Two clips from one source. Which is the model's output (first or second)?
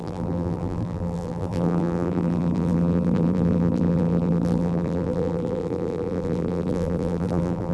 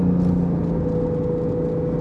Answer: first